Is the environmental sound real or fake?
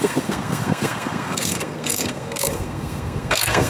fake